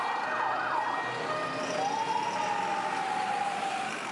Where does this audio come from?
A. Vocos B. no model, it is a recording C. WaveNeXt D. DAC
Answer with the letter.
B